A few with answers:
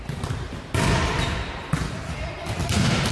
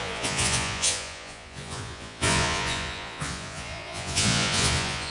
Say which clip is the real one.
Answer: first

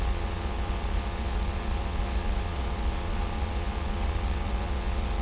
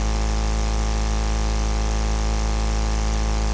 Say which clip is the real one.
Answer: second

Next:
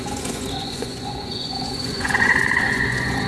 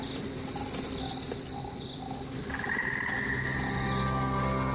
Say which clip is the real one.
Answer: second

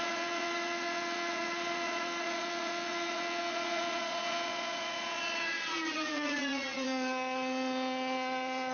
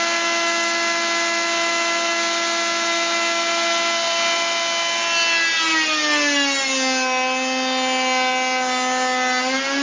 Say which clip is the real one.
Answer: second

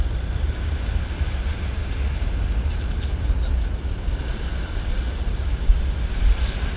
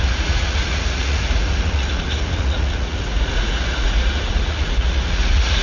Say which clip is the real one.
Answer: first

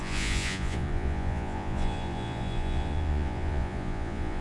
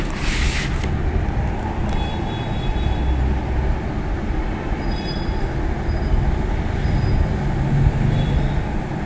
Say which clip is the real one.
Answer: second